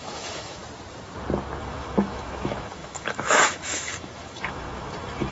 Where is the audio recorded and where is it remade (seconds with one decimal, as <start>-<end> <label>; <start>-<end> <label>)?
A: 0.0-0.6 remade; 0.6-1.6 recorded; 1.6-5.3 remade